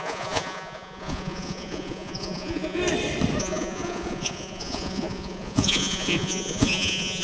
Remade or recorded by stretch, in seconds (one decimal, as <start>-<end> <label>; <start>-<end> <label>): 0.0-2.8 remade; 2.8-3.4 recorded; 3.4-7.2 remade